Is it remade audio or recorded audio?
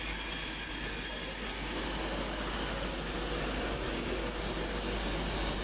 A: recorded